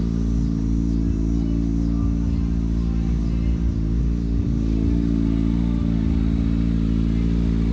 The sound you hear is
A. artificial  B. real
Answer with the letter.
B